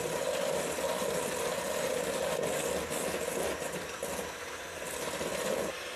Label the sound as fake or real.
real